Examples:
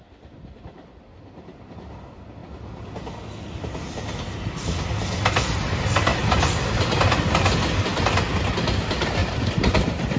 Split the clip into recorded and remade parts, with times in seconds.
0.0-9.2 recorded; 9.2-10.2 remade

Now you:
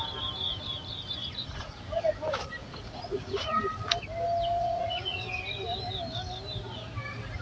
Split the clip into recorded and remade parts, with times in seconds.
0.0-1.2 recorded; 1.2-1.8 remade; 1.8-2.6 recorded; 2.6-3.6 remade; 3.6-4.6 recorded; 4.6-5.2 remade; 5.2-7.4 recorded

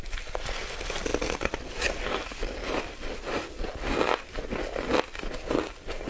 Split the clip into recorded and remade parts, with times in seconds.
0.0-6.1 recorded